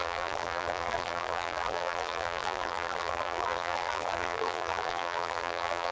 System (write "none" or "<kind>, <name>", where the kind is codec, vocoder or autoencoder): vocoder, BigVGAN v2